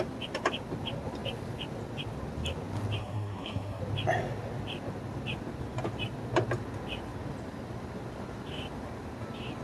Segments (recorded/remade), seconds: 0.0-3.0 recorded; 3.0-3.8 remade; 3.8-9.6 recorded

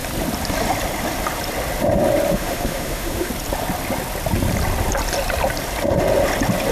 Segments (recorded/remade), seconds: 0.0-2.3 recorded; 2.3-3.3 remade; 3.3-6.7 recorded

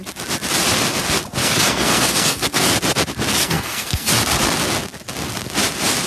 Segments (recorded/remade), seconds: 0.0-1.4 recorded; 1.4-2.7 remade; 2.7-3.3 recorded; 3.3-4.1 remade; 4.1-6.1 recorded

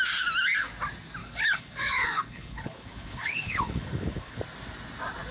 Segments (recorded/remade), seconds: 0.0-1.2 recorded; 1.2-4.4 remade; 4.4-5.3 recorded